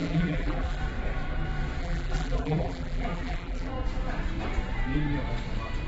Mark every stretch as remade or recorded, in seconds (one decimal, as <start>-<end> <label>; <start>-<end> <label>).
0.0-0.8 remade; 0.8-1.8 recorded; 1.8-3.7 remade; 3.7-5.9 recorded